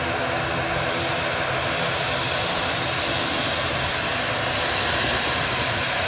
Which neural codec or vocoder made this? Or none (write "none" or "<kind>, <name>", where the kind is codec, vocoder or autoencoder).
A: none